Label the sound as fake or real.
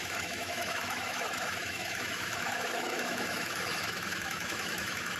fake